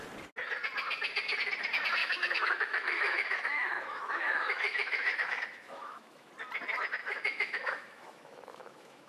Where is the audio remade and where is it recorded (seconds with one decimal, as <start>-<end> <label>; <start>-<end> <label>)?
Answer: 0.0-2.0 recorded; 2.0-6.3 remade; 6.3-7.0 recorded; 7.0-9.1 remade